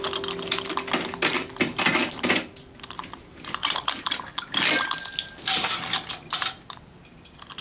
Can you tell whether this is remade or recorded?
recorded